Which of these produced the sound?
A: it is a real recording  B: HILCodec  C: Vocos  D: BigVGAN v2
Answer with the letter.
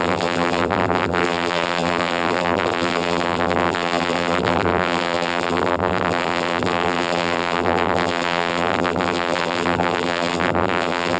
D